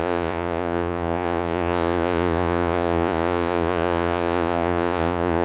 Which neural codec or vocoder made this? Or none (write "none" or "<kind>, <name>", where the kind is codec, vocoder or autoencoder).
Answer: vocoder, Vocos